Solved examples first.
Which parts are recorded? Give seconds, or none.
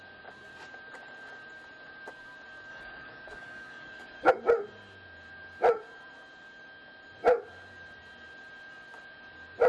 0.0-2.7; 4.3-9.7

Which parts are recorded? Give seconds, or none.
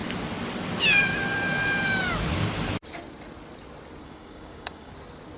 0.0-4.0; 4.9-5.4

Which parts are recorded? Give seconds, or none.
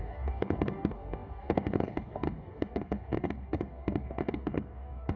none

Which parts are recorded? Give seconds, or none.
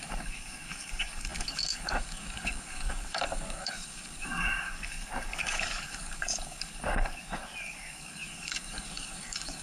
none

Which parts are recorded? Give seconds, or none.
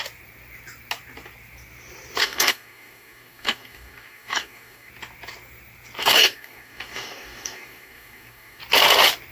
0.0-2.2; 4.9-6.0; 8.6-9.3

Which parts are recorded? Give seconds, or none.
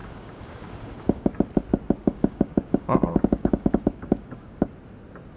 1.3-2.0; 4.7-5.4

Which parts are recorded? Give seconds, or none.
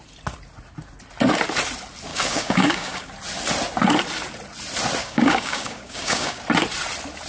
0.0-2.1; 3.1-5.0; 6.4-7.3